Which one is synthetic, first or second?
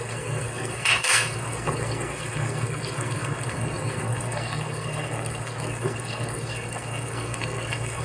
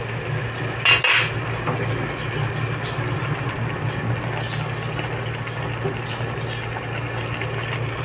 first